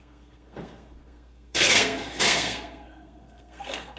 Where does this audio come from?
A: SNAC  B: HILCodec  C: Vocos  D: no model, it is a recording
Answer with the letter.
A